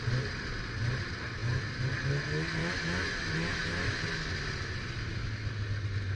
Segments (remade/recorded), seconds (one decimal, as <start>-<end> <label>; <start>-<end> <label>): 0.0-2.6 recorded; 2.6-4.0 remade; 4.0-6.2 recorded